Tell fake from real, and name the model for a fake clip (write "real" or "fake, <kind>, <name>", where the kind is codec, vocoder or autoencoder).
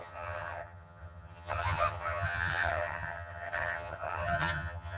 fake, vocoder, HiFi-GAN